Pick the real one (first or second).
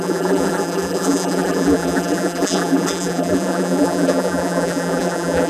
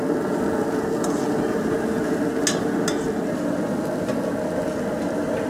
second